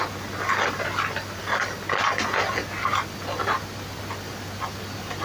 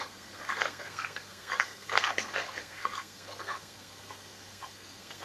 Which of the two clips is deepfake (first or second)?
second